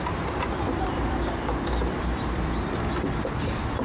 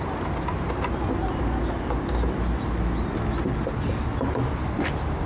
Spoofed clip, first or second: first